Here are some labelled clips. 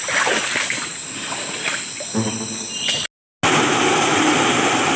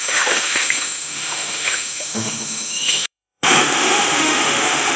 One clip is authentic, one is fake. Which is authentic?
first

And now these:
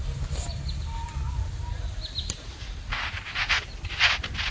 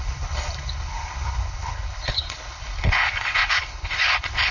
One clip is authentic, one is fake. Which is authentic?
first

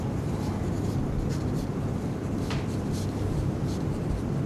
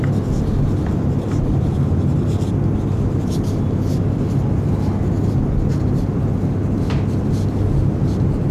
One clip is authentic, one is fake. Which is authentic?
second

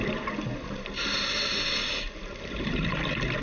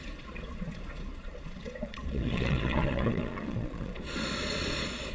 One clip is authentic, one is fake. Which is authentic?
first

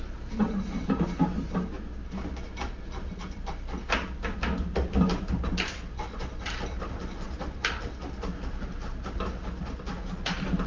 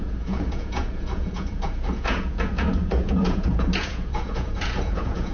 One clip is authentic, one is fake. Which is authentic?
first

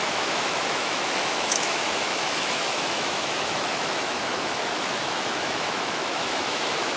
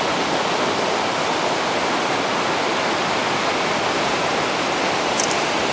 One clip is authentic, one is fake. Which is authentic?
second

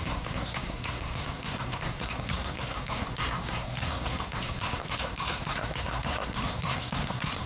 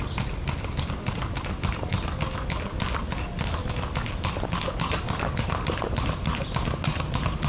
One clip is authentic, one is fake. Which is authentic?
second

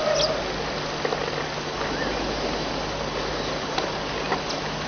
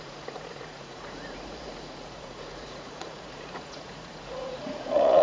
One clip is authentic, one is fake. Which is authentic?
first